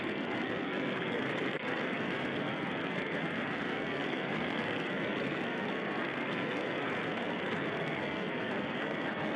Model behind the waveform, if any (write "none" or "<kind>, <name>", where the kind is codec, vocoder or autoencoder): codec, SNAC